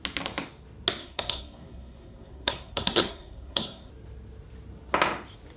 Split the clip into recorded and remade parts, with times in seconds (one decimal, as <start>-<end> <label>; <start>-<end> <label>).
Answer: 0.0-1.0 recorded; 1.0-3.9 remade; 3.9-5.6 recorded